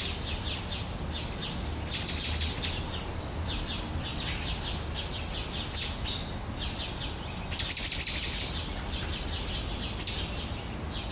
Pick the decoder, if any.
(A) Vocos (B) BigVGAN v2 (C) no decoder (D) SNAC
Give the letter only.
C